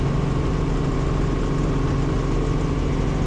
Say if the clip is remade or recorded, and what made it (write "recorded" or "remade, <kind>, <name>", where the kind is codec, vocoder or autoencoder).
recorded